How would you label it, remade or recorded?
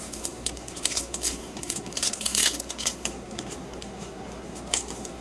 remade